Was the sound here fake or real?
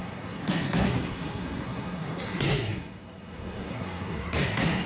fake